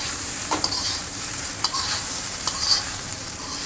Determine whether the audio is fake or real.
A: fake